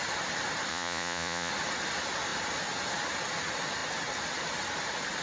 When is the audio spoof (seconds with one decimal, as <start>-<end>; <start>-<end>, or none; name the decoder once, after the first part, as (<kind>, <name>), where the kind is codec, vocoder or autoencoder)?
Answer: 0.7-1.5 (vocoder, Vocos)